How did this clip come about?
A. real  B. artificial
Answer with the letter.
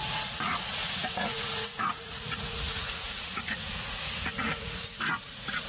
B